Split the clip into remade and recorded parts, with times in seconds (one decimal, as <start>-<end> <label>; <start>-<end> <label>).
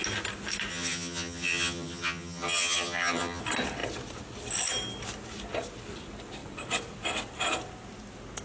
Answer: 0.0-0.7 recorded; 0.7-3.4 remade; 3.4-8.4 recorded